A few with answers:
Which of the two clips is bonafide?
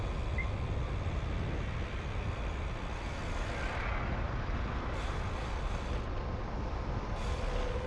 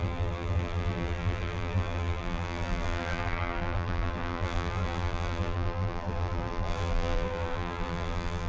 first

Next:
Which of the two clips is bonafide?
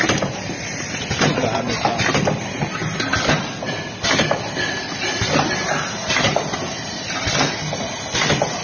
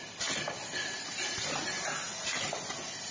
second